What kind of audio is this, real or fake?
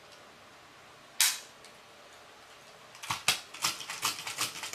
real